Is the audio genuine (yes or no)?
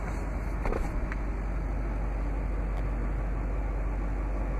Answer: yes